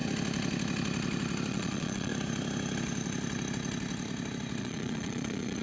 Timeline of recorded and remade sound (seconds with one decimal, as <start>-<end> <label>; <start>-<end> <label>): 0.0-1.5 recorded; 1.5-2.1 remade; 2.1-4.6 recorded; 4.6-5.6 remade